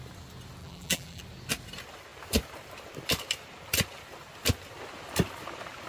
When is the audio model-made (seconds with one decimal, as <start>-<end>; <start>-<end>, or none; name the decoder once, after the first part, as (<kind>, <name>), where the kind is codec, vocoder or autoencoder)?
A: 0.6-1.2 (vocoder, BigVGAN v2)